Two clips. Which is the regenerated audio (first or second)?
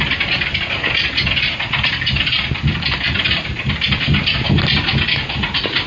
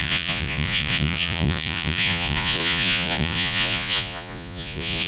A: second